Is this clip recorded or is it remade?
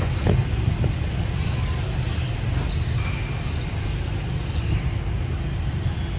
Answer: recorded